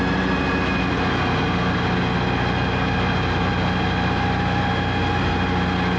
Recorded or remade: recorded